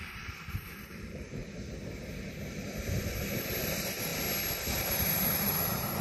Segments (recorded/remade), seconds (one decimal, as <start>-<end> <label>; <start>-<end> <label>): 0.0-1.4 remade; 1.4-3.4 recorded; 3.4-4.1 remade; 4.1-4.8 recorded; 4.8-6.0 remade